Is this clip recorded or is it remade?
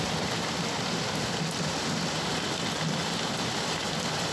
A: recorded